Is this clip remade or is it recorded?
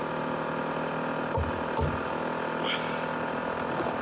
recorded